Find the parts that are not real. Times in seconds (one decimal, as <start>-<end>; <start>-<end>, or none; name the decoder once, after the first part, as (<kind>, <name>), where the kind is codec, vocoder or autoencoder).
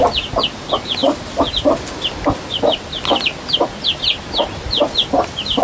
none